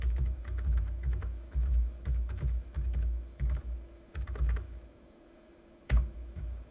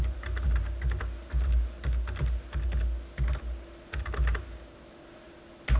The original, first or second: second